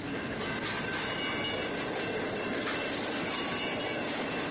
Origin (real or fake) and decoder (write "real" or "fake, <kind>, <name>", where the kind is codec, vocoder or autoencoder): real